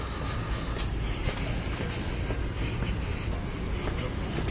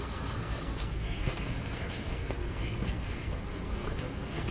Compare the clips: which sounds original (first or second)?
first